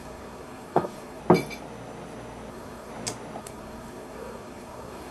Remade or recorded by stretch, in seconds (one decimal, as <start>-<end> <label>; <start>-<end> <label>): 0.0-1.2 remade; 1.2-2.5 recorded; 2.5-2.9 remade; 2.9-3.4 recorded; 3.4-5.1 remade